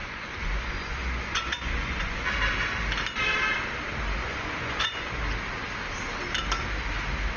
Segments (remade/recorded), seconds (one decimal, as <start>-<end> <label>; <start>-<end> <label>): 0.0-2.3 remade; 2.3-4.2 recorded; 4.2-5.1 remade; 5.1-7.4 recorded